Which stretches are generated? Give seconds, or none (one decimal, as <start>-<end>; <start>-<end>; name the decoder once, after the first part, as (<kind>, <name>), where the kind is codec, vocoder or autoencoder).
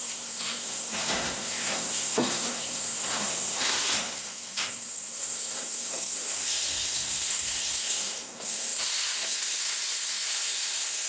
0.0-11.1 (codec, SNAC)